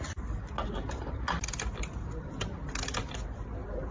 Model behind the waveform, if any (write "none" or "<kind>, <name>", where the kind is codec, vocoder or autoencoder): none